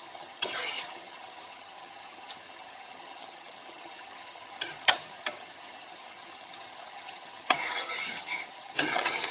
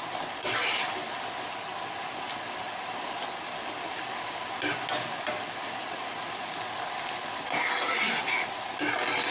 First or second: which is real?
second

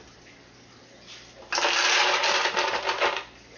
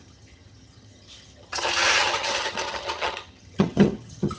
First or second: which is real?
first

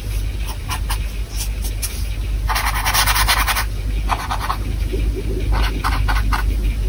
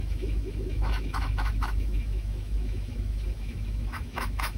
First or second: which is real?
first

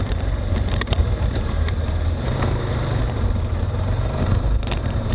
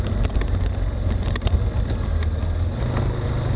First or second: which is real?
second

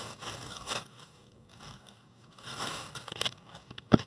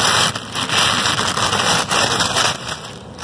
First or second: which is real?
second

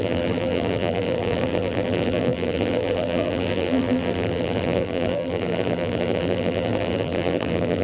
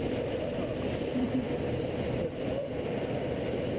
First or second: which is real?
second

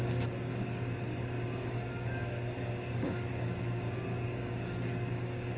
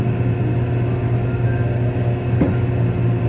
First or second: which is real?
second